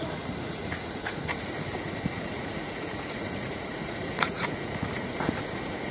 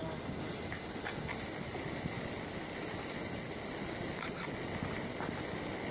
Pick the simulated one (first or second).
first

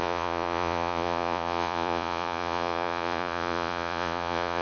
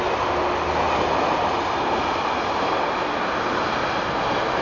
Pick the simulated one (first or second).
first